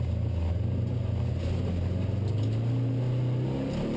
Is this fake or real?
real